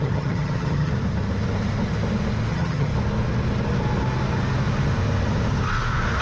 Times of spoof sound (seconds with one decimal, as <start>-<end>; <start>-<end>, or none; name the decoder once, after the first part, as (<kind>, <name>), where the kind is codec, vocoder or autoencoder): 0.0-0.9 (vocoder, HiFi-GAN); 2.5-2.9